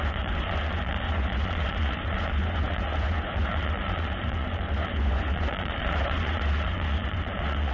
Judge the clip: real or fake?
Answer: fake